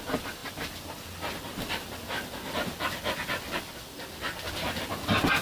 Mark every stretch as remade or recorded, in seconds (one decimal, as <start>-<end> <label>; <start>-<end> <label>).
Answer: 0.0-5.4 recorded